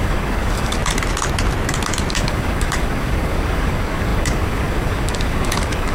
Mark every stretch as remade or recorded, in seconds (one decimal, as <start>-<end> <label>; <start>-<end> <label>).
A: 0.0-0.8 remade; 0.8-2.1 recorded; 2.1-5.9 remade